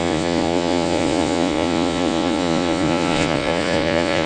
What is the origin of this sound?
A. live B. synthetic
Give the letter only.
B